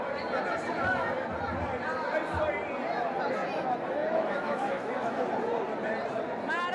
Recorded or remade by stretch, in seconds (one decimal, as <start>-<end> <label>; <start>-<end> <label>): 0.0-4.0 recorded; 4.0-5.3 remade; 5.3-6.7 recorded